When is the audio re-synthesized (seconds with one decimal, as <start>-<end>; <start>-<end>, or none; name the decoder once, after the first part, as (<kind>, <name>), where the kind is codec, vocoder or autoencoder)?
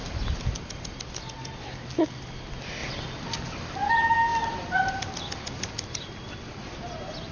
none